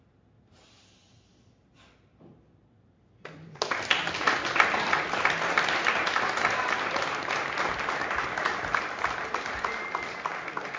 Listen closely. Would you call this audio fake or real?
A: real